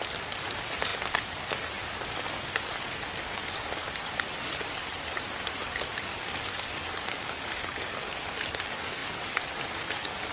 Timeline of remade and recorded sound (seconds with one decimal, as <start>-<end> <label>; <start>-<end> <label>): 0.0-3.8 remade; 3.8-5.5 recorded; 5.5-10.3 remade